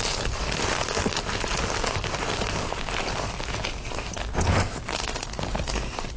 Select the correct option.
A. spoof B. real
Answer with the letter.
B